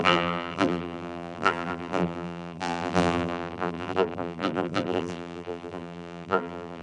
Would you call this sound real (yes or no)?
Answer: no